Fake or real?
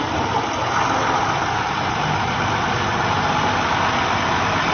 real